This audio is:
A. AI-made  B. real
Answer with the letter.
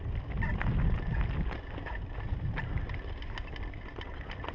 B